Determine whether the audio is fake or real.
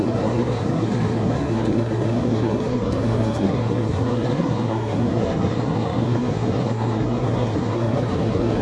fake